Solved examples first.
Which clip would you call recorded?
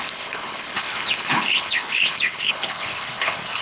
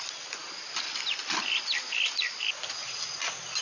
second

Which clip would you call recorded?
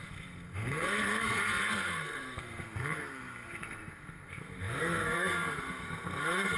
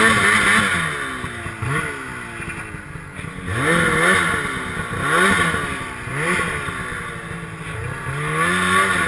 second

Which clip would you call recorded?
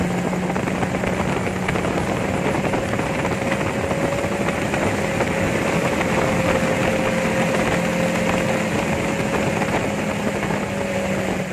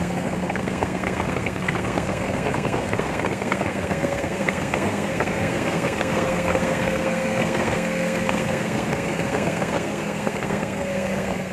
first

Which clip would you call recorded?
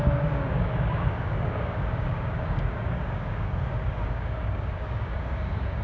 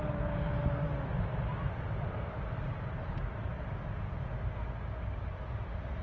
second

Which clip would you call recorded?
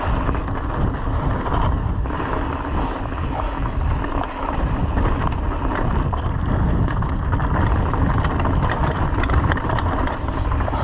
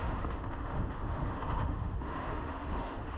first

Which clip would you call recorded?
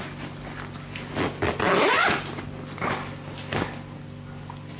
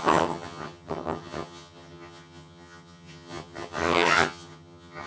first